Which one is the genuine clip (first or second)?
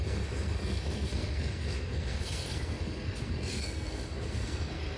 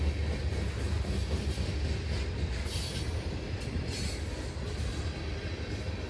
second